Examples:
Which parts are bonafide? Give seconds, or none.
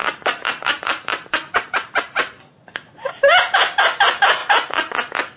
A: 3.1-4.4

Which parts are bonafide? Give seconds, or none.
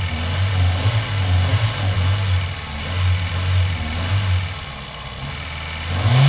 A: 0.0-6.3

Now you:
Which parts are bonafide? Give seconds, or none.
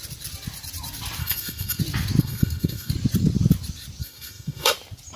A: 0.0-1.2; 1.8-2.2; 2.9-4.0; 4.7-5.2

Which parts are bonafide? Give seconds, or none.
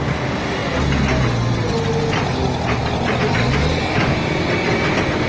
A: 0.0-5.3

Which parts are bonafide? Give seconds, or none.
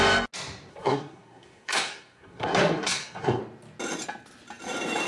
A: 0.0-0.7; 3.4-5.1